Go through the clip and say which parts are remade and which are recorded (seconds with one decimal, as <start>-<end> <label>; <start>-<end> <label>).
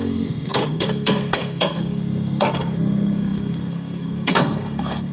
0.0-5.1 remade